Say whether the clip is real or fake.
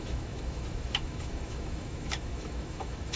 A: fake